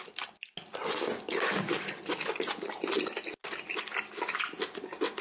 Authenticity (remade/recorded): recorded